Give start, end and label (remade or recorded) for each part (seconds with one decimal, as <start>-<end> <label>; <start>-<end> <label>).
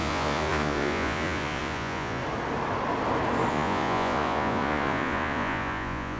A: 0.0-2.2 remade; 2.2-3.5 recorded; 3.5-6.2 remade